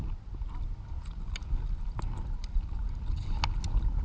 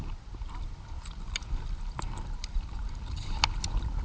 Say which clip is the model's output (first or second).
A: second